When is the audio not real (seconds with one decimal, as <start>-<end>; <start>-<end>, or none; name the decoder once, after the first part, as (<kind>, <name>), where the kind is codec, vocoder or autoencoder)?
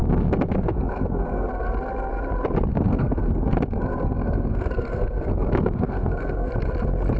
0.0-1.5 (codec, SNAC); 2.7-6.5